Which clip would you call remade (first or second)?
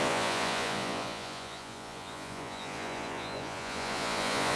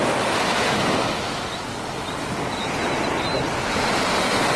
first